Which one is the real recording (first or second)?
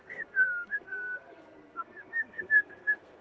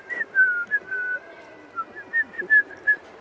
second